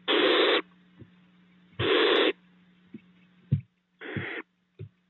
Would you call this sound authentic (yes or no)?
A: yes